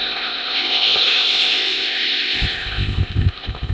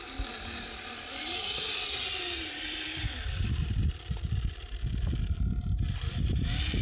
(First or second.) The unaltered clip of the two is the second